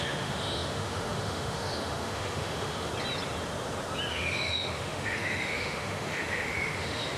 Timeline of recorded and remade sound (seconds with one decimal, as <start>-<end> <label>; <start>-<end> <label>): 0.0-2.9 remade; 2.9-4.1 recorded; 4.1-7.2 remade